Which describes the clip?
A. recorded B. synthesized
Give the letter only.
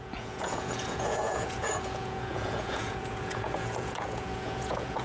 B